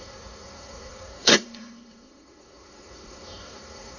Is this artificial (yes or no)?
yes